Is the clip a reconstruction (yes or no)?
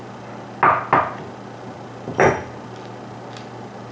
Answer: no